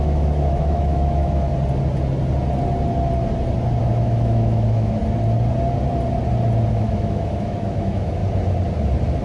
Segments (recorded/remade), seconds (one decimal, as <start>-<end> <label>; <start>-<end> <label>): 0.0-1.5 remade; 1.5-3.8 recorded; 3.8-5.0 remade; 5.0-6.7 recorded; 6.7-8.2 remade; 8.2-9.2 recorded

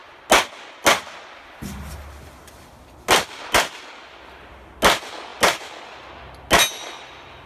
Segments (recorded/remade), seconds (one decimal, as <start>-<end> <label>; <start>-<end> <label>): 0.0-7.5 recorded

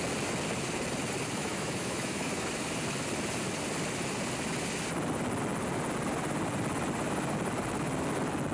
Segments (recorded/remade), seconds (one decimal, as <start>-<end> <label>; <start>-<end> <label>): 0.0-1.4 recorded; 1.4-2.5 remade; 2.5-8.5 recorded

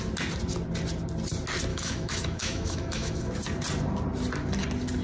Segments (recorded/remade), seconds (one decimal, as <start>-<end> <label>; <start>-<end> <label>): 0.0-1.7 recorded; 1.7-3.3 remade; 3.3-5.0 recorded

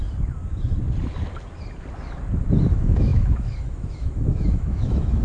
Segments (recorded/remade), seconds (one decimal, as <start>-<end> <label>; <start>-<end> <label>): 0.0-2.7 recorded; 2.7-5.2 remade